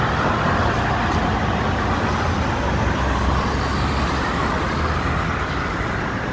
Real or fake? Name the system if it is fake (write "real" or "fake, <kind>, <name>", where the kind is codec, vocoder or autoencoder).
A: real